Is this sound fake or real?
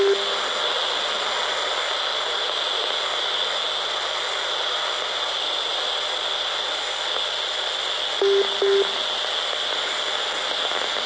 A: real